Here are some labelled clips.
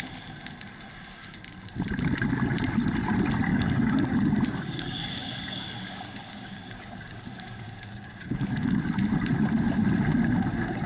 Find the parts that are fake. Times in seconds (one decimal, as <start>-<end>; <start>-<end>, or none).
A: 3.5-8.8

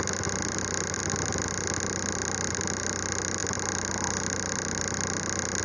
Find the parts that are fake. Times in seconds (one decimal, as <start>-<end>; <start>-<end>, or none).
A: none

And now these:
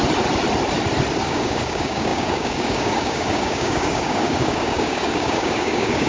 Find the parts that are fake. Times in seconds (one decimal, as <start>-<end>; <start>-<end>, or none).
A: 1.2-6.1

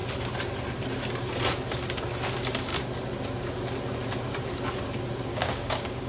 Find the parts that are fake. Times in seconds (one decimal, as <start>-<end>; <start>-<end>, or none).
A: 5.3-6.1

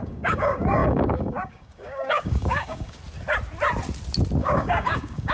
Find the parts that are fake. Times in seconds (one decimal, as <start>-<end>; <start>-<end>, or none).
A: 0.0-3.0; 4.4-5.3

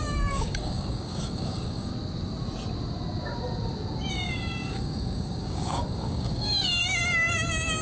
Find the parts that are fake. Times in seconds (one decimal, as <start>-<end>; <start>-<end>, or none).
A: 0.0-1.9; 4.1-7.8

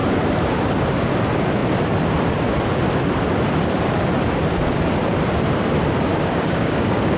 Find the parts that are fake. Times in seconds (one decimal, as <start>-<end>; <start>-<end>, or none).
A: 6.1-7.2

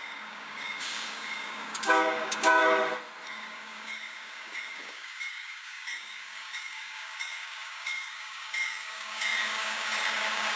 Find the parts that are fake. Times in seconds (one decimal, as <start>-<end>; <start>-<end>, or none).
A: 0.0-2.6; 3.3-10.6